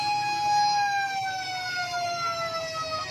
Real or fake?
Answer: real